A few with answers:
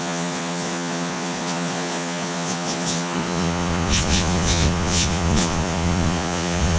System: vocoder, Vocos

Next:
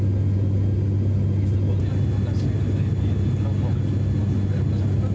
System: none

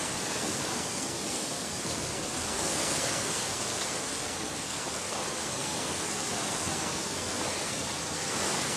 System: codec, SNAC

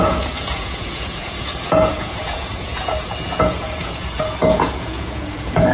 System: vocoder, Vocos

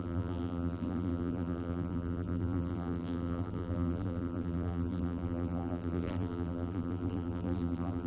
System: vocoder, BigVGAN v2